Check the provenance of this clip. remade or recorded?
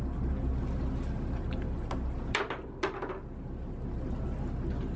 recorded